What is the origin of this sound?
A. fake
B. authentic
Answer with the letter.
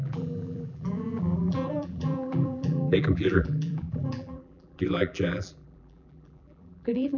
A